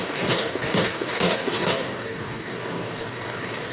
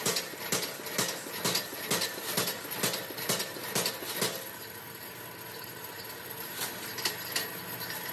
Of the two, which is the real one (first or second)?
second